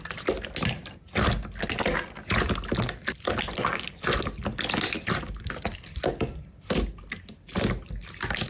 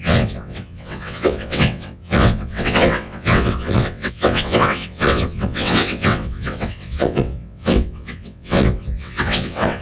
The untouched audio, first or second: first